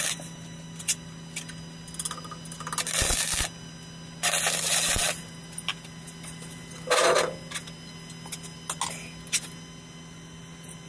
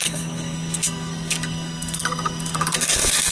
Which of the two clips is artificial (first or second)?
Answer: second